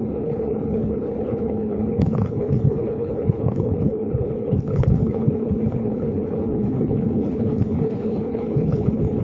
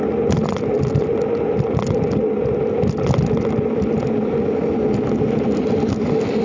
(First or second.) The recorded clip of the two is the second